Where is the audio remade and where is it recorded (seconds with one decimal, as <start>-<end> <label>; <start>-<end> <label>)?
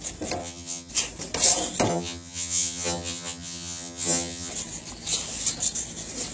0.0-0.4 recorded; 0.4-0.9 remade; 0.9-1.9 recorded; 1.9-4.5 remade; 4.5-6.3 recorded